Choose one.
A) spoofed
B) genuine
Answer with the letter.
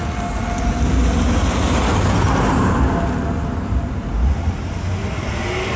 B